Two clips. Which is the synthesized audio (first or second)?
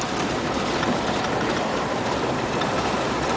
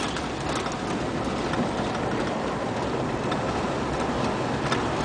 first